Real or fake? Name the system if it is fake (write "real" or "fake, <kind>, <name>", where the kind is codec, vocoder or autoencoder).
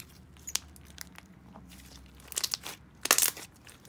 real